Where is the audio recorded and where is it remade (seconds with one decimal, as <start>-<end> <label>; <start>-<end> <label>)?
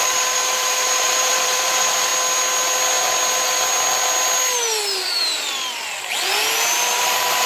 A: 0.0-2.1 remade; 2.1-6.6 recorded; 6.6-7.5 remade